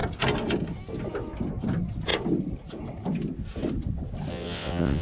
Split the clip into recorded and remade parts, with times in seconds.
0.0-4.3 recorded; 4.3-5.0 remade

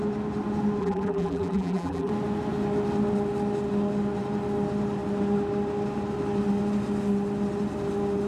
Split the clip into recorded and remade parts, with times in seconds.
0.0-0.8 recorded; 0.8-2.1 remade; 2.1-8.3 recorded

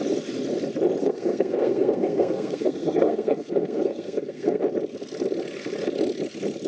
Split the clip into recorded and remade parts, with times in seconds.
0.0-1.0 recorded; 1.0-4.6 remade; 4.6-6.7 recorded